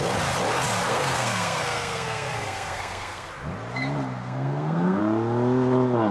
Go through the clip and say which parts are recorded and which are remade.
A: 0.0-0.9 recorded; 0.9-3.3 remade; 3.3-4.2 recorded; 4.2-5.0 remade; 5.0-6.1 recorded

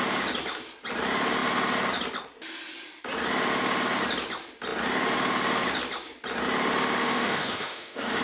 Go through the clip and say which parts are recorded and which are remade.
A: 0.0-7.0 recorded; 7.0-8.2 remade

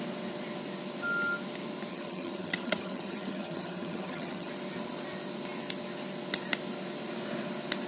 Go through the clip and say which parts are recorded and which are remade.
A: 0.0-1.9 recorded; 1.9-4.5 remade; 4.5-7.9 recorded

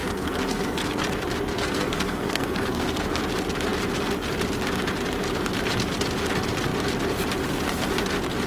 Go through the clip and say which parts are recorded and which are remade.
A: 0.0-1.0 remade; 1.0-1.5 recorded; 1.5-3.2 remade; 3.2-8.5 recorded